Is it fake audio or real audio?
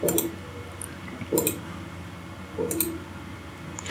real